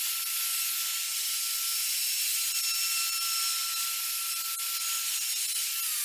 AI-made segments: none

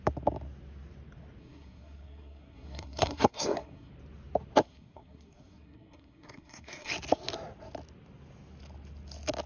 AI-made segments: 1.4-3.9 (codec, SNAC); 4.6-6.9